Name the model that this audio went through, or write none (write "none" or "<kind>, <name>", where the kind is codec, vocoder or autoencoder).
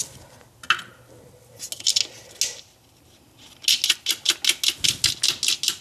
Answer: none